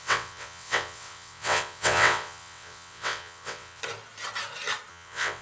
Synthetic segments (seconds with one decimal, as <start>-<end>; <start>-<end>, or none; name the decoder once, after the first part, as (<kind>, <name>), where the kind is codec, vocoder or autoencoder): 0.0-3.8 (vocoder, WaveNeXt); 4.9-5.4